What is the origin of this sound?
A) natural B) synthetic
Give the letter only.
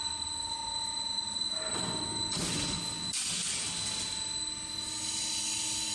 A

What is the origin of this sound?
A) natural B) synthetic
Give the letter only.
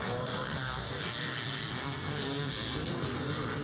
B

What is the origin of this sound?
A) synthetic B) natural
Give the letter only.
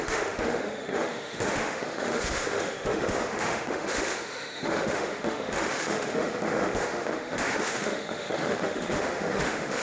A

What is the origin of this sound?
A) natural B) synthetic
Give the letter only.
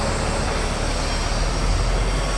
A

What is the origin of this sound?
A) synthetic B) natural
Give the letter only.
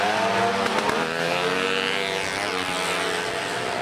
B